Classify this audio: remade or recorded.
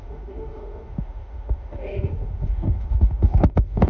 remade